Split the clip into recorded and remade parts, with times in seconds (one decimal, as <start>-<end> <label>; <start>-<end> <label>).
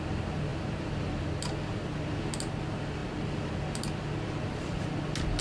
0.0-5.4 recorded